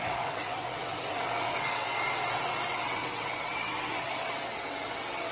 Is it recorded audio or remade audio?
remade